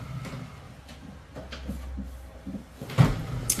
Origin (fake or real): real